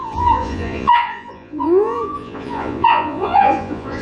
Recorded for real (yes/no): no